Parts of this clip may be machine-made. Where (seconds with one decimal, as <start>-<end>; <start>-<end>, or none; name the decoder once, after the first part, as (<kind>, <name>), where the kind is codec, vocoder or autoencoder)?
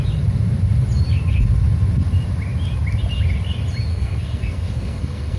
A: 3.9-5.4 (codec, SNAC)